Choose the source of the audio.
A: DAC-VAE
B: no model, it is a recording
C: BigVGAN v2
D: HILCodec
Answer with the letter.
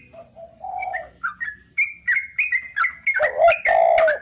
B